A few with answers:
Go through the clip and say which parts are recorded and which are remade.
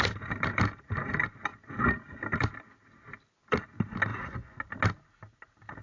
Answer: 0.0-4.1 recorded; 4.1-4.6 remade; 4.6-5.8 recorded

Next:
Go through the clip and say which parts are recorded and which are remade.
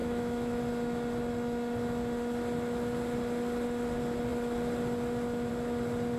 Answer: 0.0-0.6 remade; 0.6-6.2 recorded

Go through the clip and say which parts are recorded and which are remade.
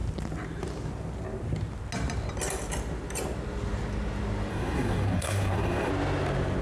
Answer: 0.0-4.5 recorded; 4.5-5.9 remade; 5.9-6.6 recorded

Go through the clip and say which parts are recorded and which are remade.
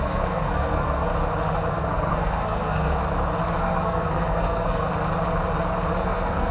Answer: 0.0-1.1 remade; 1.1-1.7 recorded; 1.7-3.0 remade; 3.0-3.6 recorded; 3.6-4.9 remade; 4.9-6.0 recorded; 6.0-6.5 remade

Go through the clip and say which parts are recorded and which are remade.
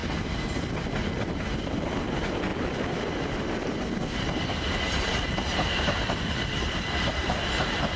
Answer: 0.0-8.0 recorded